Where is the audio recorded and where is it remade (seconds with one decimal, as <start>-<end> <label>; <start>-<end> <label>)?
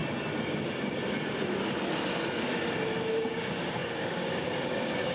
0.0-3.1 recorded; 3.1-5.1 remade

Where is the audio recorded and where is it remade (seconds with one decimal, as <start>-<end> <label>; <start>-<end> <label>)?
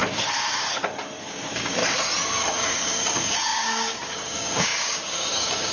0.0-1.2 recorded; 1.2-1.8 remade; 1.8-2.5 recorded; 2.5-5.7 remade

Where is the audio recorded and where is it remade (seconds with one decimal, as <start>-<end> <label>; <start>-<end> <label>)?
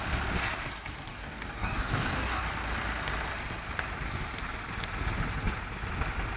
0.0-1.1 recorded; 1.1-2.4 remade; 2.4-6.4 recorded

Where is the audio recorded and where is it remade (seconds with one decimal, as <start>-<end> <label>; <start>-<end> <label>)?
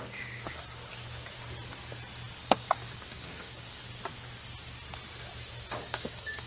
0.0-2.4 recorded; 2.4-3.8 remade; 3.8-5.7 recorded; 5.7-6.5 remade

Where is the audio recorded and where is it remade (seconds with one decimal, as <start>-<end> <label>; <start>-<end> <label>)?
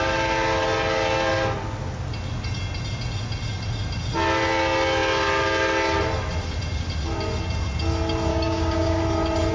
0.0-8.3 recorded; 8.3-9.0 remade; 9.0-9.5 recorded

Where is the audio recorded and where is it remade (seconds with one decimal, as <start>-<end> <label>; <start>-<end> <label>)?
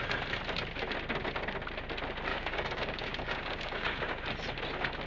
0.0-2.3 recorded; 2.3-4.2 remade; 4.2-5.1 recorded